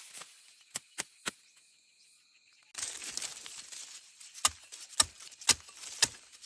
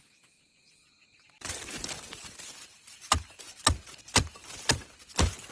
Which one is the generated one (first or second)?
second